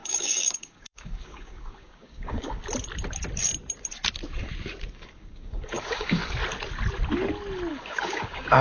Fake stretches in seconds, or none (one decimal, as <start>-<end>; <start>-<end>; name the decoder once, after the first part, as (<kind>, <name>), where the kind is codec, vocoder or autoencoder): 0.0-2.6 (codec, DAC); 4.9-6.2; 7.7-8.6